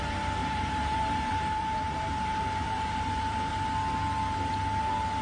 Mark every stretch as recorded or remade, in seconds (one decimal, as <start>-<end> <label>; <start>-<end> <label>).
0.0-0.4 recorded; 0.4-3.5 remade; 3.5-5.2 recorded

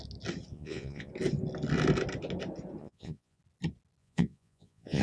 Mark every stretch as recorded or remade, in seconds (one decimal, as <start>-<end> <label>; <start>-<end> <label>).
0.0-0.5 recorded; 0.5-1.1 remade; 1.1-2.8 recorded; 2.8-3.4 remade; 3.4-4.0 recorded; 4.0-5.0 remade

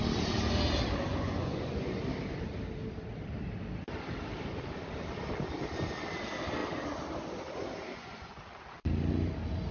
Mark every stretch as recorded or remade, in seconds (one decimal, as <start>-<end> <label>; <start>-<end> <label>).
0.0-1.1 recorded; 1.1-2.0 remade; 2.0-7.9 recorded; 7.9-8.4 remade; 8.4-9.7 recorded

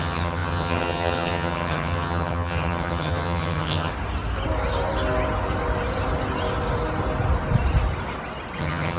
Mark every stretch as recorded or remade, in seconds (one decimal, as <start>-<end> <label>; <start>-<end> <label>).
0.0-3.9 remade; 3.9-8.6 recorded; 8.6-9.0 remade

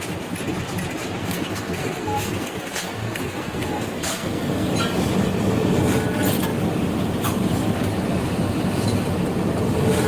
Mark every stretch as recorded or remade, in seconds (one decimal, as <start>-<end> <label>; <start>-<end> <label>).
0.0-1.2 recorded; 1.2-4.7 remade; 4.7-10.1 recorded

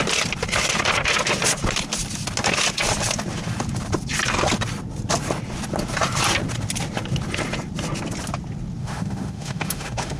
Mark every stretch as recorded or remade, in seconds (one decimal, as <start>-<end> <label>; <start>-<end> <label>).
0.0-8.8 recorded; 8.8-10.2 remade